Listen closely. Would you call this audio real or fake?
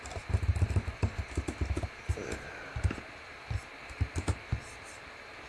real